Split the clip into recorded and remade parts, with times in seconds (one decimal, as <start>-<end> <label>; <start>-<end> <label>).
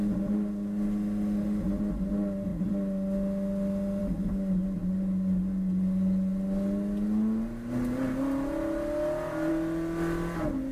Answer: 0.0-10.7 recorded